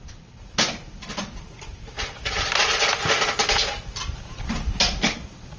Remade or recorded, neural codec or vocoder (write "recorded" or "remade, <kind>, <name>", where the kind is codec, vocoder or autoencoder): recorded